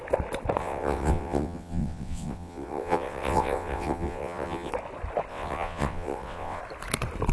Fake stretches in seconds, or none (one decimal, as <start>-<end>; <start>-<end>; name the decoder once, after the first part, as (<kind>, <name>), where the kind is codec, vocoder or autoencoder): 0.6-4.7 (vocoder, WaveNeXt); 5.3-6.6